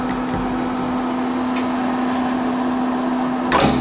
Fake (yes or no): no